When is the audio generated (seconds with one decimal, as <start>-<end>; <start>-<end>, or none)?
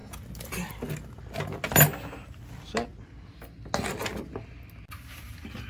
2.9-3.7